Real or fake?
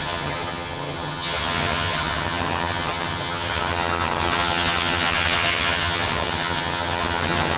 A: fake